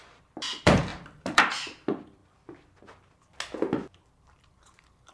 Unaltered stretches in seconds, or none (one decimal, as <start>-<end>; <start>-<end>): 2.2-4.4